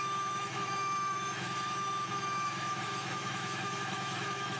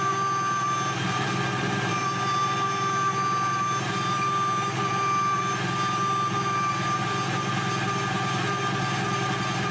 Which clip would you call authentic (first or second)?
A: second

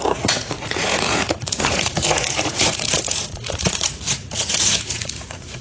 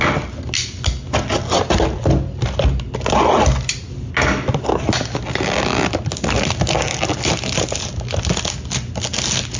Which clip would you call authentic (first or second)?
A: second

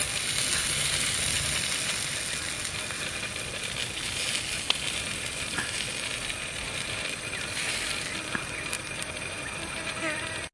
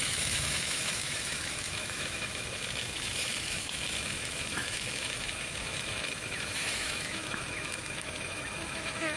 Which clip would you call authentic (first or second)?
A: first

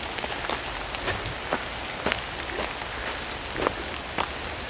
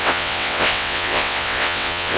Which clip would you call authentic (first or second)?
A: first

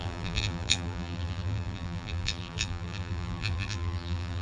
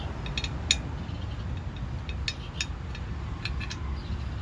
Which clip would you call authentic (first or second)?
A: second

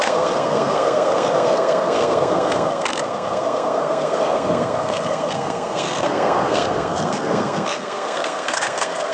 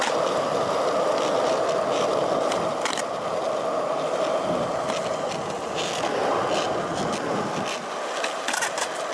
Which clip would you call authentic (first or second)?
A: second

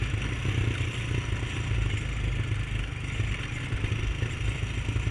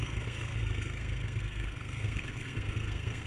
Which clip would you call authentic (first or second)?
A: first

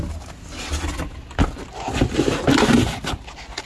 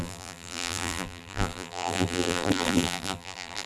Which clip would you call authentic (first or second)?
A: first